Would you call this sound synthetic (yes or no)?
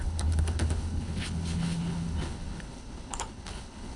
yes